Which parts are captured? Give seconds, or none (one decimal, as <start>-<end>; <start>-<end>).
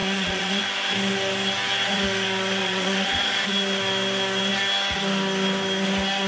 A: 0.6-2.6; 3.4-6.3